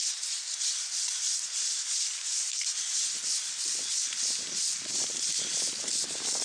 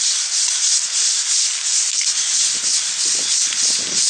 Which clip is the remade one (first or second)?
first